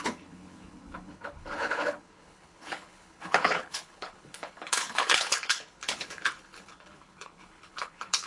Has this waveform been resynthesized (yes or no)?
yes